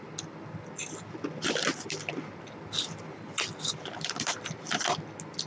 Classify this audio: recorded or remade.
recorded